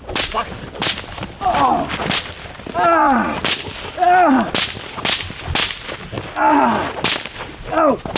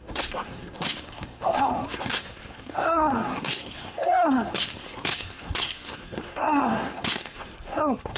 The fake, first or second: second